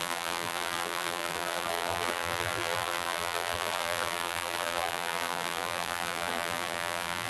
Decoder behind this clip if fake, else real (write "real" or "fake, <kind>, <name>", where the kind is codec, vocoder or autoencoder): fake, vocoder, BigVGAN v2